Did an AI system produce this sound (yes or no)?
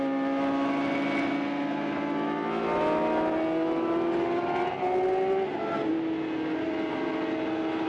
no